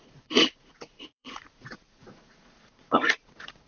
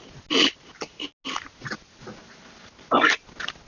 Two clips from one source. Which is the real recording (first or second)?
second